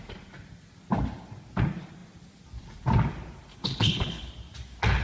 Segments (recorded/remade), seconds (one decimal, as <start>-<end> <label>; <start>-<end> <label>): 0.0-3.5 recorded; 3.5-4.3 remade; 4.3-5.0 recorded